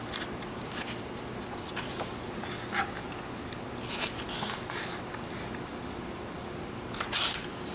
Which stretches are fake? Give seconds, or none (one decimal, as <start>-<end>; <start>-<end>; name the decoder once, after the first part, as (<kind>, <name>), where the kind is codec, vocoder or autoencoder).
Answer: none